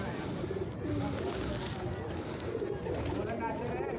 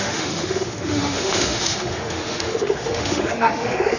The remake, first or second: second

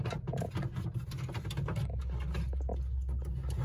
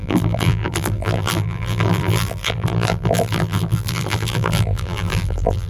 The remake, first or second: second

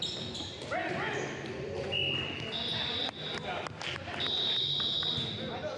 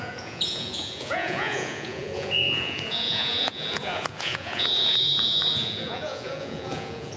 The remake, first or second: second